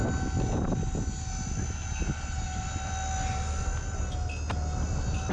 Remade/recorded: recorded